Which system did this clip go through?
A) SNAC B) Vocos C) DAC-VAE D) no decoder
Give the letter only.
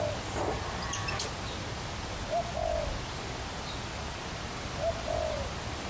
D